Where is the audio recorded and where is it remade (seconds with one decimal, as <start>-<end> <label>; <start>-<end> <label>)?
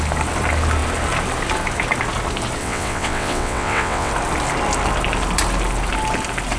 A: 0.0-2.6 recorded; 2.6-4.1 remade; 4.1-6.6 recorded